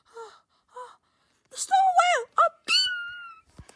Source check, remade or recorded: remade